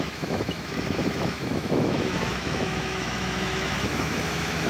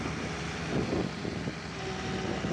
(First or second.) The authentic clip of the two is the second